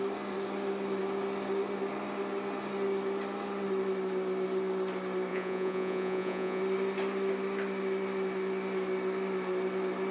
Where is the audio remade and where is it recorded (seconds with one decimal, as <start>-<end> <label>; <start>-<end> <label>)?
0.0-5.3 recorded; 5.3-6.6 remade; 6.6-10.1 recorded